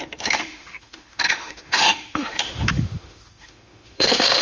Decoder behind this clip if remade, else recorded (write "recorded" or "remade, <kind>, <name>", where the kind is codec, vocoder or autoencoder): remade, autoencoder, DAC-VAE